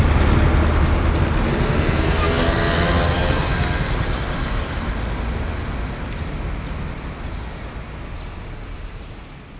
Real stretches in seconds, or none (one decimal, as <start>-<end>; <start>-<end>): 0.0-9.6